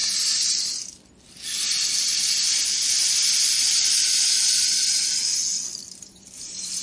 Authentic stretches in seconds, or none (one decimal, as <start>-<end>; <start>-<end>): 0.0-5.8